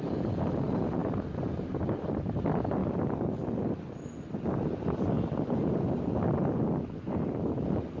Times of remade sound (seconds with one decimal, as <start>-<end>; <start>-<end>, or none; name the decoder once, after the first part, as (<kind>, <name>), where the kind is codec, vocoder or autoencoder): none